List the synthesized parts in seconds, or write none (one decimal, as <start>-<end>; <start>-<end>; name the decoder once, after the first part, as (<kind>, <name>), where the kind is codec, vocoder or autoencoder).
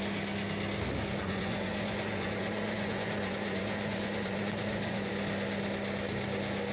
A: 1.2-5.1 (vocoder, Vocos)